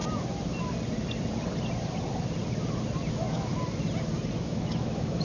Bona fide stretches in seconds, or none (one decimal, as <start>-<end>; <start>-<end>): 0.0-3.1; 3.5-4.4

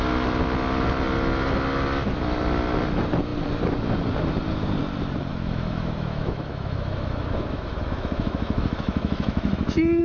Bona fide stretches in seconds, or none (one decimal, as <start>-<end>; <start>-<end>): 0.0-5.3

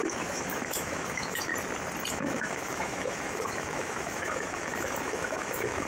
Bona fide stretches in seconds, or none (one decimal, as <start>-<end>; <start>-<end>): 1.5-2.1

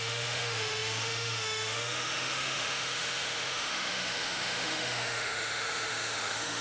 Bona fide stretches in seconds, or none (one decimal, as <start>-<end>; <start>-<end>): none

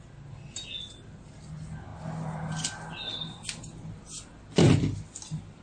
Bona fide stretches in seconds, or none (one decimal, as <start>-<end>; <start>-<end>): 0.0-5.6

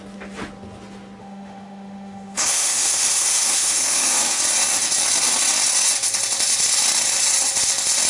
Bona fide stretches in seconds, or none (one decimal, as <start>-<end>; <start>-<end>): 0.0-1.2; 4.4-8.1

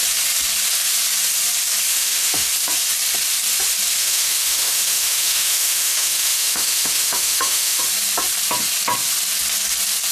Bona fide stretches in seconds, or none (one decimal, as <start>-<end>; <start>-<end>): 0.0-1.9; 2.5-4.0; 7.8-10.1